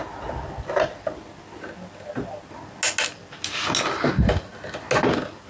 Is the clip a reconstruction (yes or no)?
no